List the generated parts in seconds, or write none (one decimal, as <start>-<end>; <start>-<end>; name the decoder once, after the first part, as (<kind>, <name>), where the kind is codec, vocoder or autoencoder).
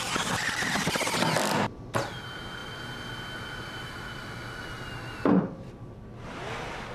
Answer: none